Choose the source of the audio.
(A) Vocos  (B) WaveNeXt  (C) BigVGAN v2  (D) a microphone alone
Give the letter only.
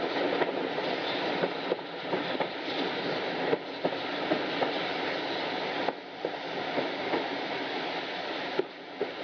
D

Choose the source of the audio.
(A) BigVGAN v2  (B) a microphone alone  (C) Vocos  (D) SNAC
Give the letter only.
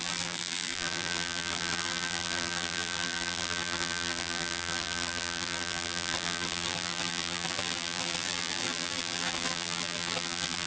A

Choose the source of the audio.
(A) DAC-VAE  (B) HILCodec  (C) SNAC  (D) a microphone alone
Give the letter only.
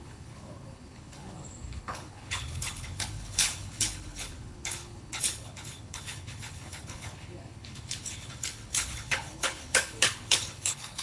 B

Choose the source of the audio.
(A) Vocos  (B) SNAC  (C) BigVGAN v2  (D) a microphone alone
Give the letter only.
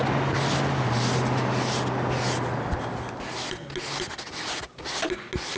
D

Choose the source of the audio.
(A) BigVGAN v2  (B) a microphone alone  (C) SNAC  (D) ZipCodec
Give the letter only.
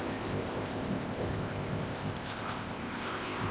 D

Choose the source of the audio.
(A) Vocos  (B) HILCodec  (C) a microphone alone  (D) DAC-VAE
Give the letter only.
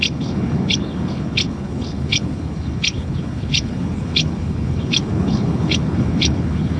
B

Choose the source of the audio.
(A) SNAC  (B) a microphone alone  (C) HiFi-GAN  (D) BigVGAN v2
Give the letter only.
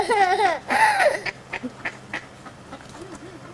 B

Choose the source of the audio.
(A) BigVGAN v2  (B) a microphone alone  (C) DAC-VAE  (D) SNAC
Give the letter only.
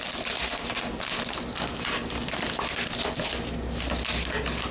B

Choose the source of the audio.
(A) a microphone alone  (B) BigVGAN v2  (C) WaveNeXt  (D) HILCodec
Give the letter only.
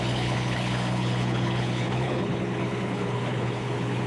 D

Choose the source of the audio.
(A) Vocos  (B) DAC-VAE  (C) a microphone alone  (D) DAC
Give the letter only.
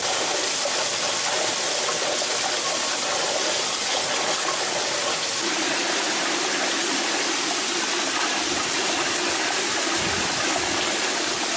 C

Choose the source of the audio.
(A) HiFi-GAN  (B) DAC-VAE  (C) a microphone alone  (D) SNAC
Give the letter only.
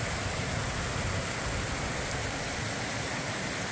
C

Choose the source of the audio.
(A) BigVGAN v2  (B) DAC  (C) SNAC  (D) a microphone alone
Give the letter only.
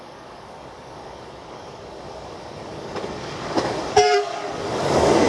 B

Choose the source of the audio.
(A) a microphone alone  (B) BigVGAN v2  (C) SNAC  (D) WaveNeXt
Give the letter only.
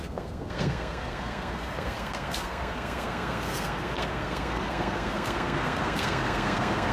C